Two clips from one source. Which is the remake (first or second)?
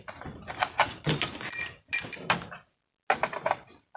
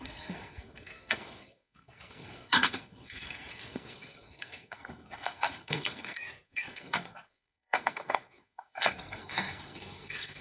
second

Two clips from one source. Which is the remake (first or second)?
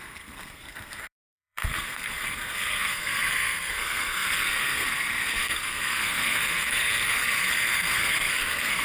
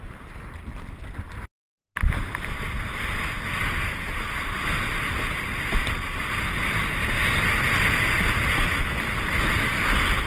first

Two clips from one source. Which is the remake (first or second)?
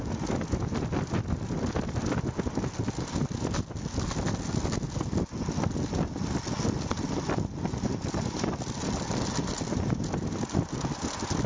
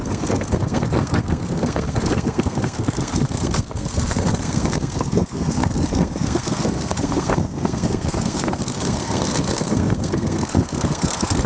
second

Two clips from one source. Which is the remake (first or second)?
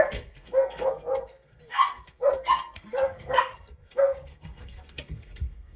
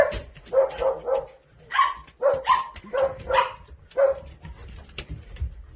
first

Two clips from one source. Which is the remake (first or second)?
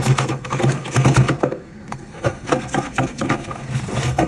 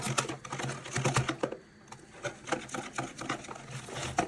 first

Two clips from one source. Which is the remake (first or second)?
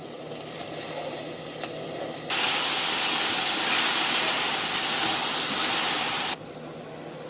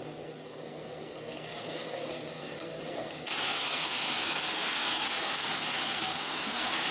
second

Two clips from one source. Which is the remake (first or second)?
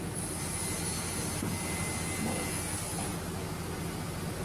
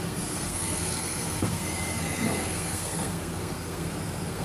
second